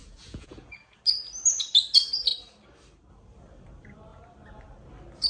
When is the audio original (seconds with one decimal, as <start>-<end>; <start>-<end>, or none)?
1.0-5.3